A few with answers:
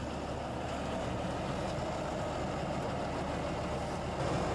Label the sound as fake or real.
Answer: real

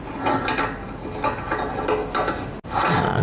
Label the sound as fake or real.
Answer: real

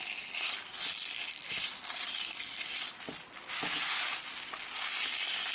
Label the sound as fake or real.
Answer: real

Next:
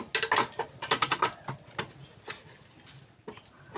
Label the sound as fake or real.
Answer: real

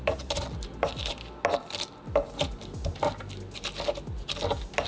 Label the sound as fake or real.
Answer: real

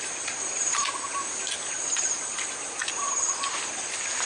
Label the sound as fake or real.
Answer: real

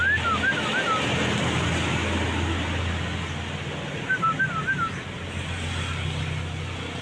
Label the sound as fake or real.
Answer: real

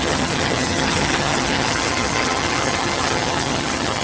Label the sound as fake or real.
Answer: fake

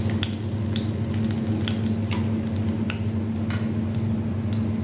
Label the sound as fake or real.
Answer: real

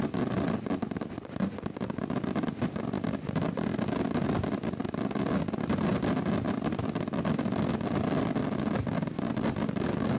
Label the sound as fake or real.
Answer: real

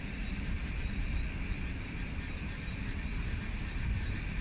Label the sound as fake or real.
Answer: fake